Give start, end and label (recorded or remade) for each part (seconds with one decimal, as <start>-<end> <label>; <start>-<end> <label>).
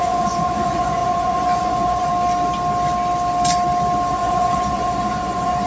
0.0-2.1 remade; 2.1-4.1 recorded; 4.1-5.7 remade